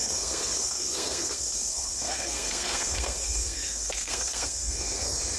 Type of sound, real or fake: fake